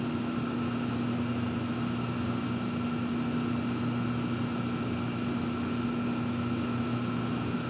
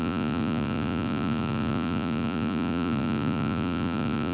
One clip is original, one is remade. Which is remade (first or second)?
second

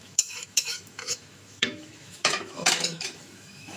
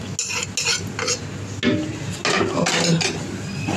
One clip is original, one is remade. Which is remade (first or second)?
first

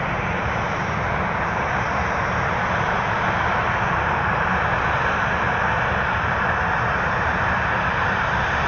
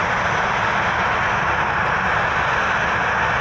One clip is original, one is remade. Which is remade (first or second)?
first